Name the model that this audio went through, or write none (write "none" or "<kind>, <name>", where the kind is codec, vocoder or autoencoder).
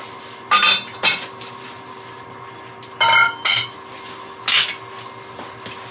none